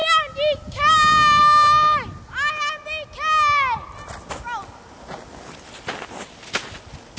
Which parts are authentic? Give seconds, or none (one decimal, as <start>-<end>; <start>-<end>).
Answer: 0.0-7.2